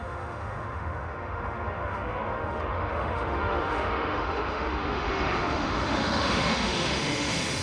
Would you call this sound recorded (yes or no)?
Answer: no